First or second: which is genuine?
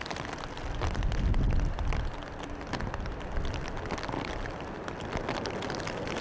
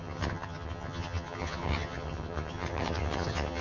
first